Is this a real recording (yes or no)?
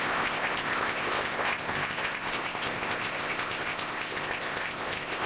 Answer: no